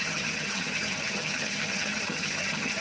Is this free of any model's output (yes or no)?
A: no